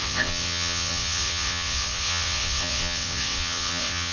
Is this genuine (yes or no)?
no